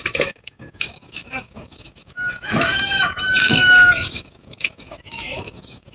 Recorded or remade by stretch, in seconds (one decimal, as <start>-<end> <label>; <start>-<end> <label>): 0.0-5.9 remade